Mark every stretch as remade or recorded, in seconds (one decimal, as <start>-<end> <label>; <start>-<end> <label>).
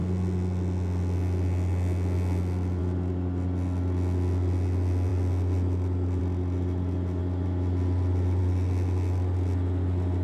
0.0-10.2 recorded